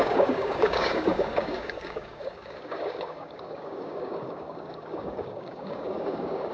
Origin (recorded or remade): remade